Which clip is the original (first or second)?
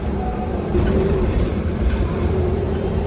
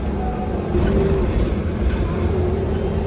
second